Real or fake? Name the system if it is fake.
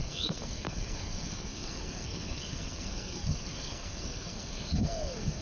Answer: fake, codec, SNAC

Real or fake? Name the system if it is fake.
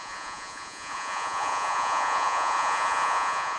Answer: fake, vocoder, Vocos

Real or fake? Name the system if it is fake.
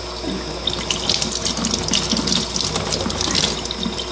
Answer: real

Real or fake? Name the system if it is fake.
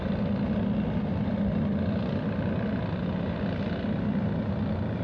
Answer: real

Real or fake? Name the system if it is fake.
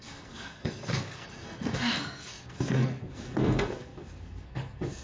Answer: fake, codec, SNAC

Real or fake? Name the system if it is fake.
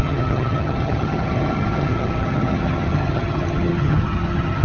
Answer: fake, vocoder, HiFi-GAN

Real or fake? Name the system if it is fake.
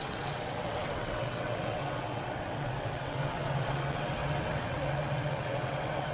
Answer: fake, vocoder, WaveNeXt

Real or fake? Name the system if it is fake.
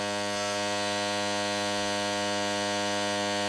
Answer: real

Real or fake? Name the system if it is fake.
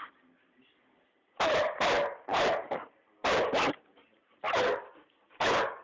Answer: real